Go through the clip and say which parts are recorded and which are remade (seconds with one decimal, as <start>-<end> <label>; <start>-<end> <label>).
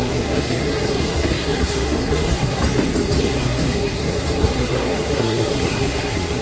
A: 0.0-2.6 remade; 2.6-3.2 recorded; 3.2-6.4 remade